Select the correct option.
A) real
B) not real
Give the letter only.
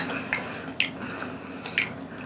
A